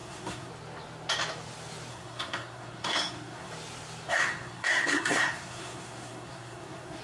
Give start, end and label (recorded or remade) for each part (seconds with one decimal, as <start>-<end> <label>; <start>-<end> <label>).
0.0-0.5 remade; 0.5-1.9 recorded; 1.9-3.5 remade; 3.5-4.1 recorded; 4.1-7.0 remade